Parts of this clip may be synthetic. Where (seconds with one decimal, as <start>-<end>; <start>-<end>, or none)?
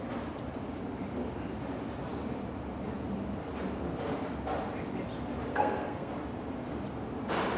5.5-6.1